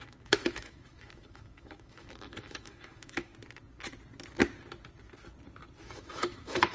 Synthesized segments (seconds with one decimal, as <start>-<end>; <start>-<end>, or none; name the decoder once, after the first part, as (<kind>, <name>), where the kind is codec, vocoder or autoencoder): 0.0-3.3 (autoencoder, DAC-VAE); 5.8-6.7